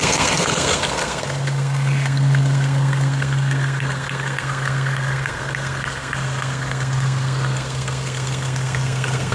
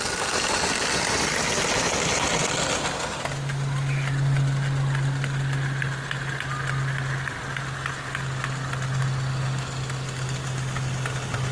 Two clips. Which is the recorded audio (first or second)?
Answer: second